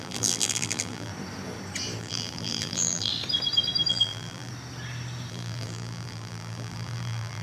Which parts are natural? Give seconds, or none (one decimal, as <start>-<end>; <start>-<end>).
1.1-2.0; 3.1-3.9; 4.5-5.3